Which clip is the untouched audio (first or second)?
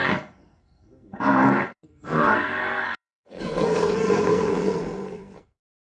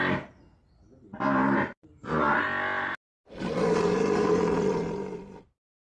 second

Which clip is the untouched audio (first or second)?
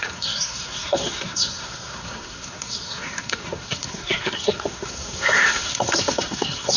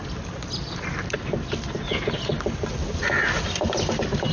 second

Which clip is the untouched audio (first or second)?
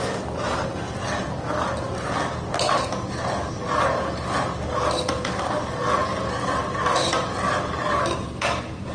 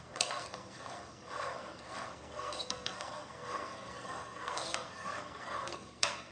first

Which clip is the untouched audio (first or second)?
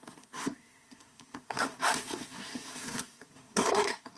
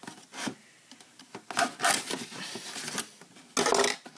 second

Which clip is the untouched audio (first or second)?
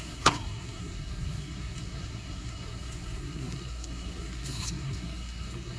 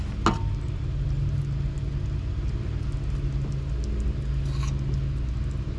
second